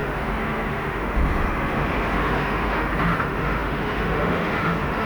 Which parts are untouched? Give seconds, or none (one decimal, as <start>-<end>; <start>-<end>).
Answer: none